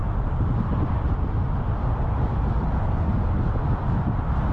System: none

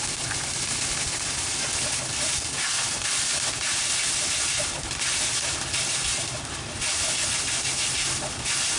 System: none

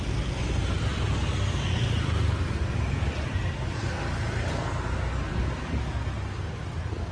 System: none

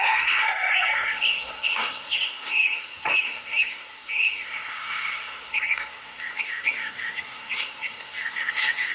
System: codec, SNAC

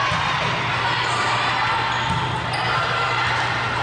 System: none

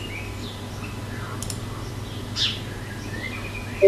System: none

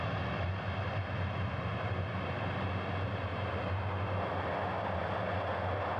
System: none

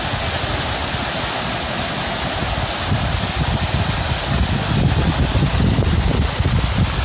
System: none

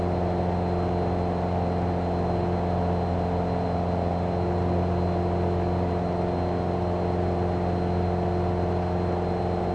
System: none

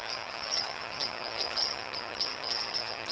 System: vocoder, HiFi-GAN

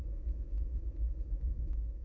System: autoencoder, DAC-VAE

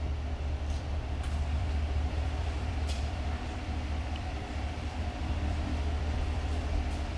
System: vocoder, BigVGAN v2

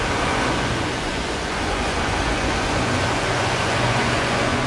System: vocoder, Vocos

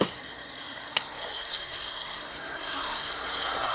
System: codec, SNAC